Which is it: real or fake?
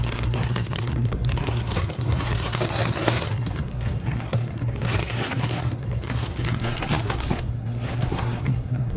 fake